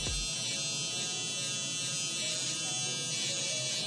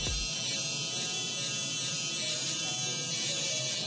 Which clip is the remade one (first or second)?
second